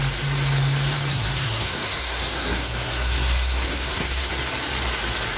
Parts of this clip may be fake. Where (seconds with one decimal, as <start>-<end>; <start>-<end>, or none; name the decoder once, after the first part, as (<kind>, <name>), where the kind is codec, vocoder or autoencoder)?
1.1-4.3 (codec, SNAC)